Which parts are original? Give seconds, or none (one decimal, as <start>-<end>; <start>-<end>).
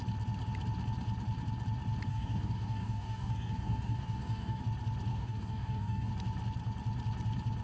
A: 0.0-2.1; 4.6-5.1; 6.1-7.6